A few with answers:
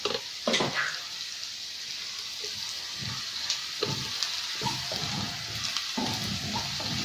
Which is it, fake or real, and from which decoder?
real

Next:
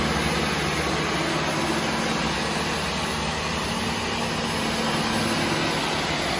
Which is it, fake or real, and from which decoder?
real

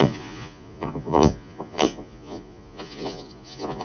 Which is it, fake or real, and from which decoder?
fake, vocoder, Vocos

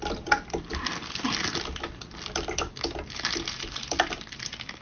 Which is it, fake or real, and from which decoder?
real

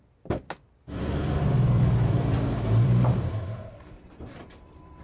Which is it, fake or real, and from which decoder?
fake, vocoder, BigVGAN v2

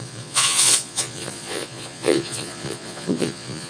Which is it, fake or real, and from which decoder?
fake, vocoder, Vocos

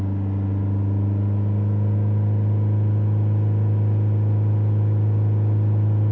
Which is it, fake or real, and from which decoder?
real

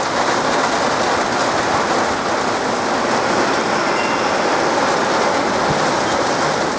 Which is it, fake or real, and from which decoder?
real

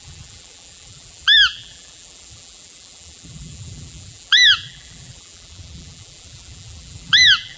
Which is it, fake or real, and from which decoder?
fake, vocoder, BigVGAN v2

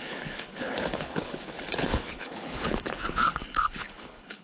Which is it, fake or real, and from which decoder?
fake, codec, HILCodec